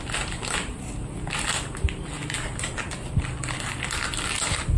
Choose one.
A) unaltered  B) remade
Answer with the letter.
A